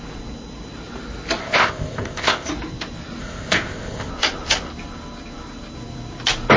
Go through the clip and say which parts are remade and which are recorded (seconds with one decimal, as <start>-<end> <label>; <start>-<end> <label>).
0.0-1.4 recorded; 1.4-2.5 remade; 2.5-3.2 recorded; 3.2-4.1 remade; 4.1-6.6 recorded